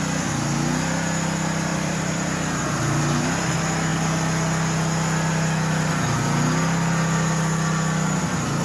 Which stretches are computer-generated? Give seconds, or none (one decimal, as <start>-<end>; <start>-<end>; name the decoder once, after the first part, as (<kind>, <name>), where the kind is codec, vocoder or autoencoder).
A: 1.7-3.4 (vocoder, BigVGAN v2)

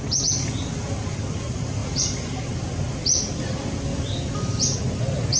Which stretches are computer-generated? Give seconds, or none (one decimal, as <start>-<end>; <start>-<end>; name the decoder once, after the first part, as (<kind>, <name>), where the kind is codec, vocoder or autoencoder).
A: none

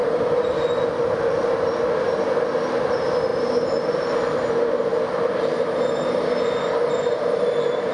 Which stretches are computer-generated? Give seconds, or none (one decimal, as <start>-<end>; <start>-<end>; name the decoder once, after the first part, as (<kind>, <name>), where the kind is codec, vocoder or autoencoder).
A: 3.3-4.5 (vocoder, BigVGAN v2); 4.9-6.3